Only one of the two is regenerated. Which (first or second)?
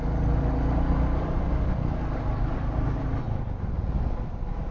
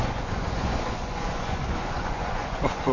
second